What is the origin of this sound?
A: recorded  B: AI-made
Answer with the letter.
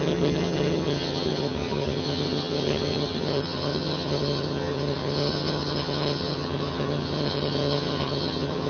B